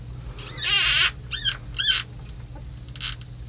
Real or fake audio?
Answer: real